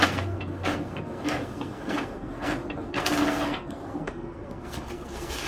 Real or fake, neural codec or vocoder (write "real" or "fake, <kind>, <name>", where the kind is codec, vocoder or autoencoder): fake, codec, SNAC